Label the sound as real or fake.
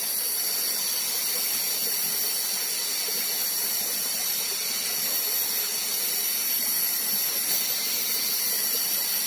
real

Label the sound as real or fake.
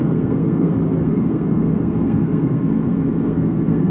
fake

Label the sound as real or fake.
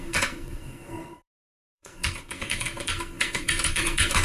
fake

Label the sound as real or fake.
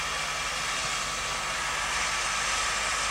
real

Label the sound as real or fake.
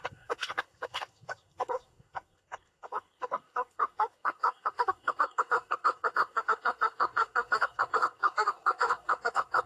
fake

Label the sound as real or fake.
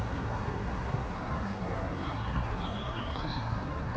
fake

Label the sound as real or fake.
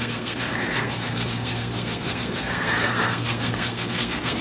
fake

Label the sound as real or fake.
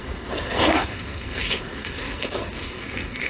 fake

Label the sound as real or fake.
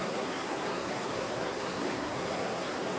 fake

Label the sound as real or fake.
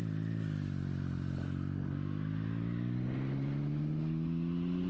real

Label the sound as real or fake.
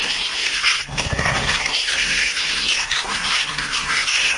fake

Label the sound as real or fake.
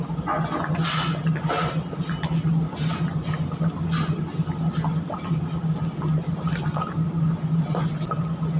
real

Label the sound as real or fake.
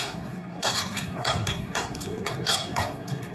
fake